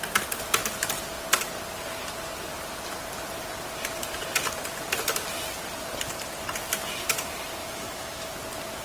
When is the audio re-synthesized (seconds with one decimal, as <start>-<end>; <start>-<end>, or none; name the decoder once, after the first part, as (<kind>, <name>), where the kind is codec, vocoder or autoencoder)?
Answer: 7.6-8.3 (autoencoder, DAC-VAE)